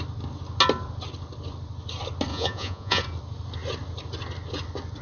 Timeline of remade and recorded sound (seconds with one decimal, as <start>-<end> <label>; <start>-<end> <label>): 0.0-2.3 recorded; 2.3-3.0 remade; 3.0-5.0 recorded